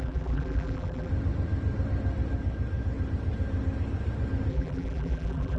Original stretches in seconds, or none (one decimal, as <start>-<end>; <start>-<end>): 1.1-4.5